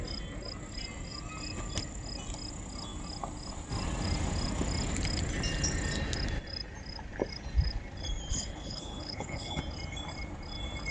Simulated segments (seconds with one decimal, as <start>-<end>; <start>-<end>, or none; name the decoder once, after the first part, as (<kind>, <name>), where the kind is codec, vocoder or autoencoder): 8.3-9.6 (codec, HILCodec)